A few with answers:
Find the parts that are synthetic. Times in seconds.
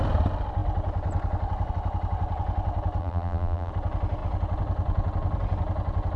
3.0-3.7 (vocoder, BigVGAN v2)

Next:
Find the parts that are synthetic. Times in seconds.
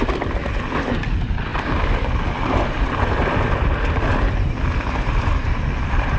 none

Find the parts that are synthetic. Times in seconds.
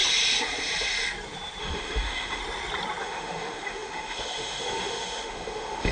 1.6-2.4 (autoencoder, DAC-VAE); 3.0-5.9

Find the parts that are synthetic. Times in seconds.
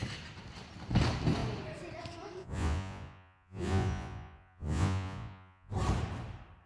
2.4-5.7 (vocoder, Vocos)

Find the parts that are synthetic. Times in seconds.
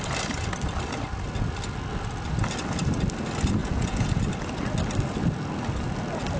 3.6-4.2 (vocoder, Vocos)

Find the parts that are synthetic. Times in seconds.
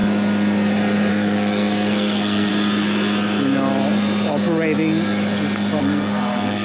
1.1-2.5 (codec, SNAC); 5.8-6.6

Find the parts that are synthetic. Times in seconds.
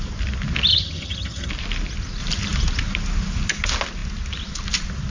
0.7-1.5 (vocoder, HiFi-GAN)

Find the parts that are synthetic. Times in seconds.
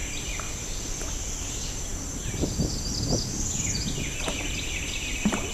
none